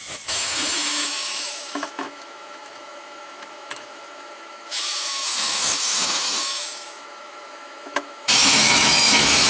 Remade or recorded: remade